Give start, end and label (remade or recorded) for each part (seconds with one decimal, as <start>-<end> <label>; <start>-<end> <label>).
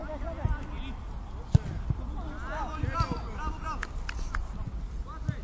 0.0-5.4 recorded